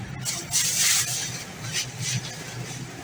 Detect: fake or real real